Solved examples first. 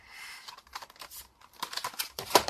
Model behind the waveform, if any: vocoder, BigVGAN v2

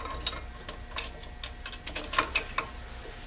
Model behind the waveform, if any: none